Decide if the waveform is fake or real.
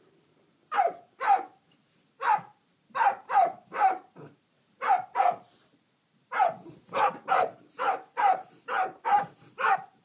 fake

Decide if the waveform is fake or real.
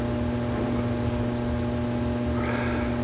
real